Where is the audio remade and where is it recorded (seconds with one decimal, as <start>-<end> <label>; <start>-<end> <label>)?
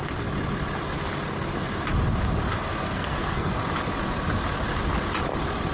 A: 0.0-2.8 recorded; 2.8-3.5 remade; 3.5-5.7 recorded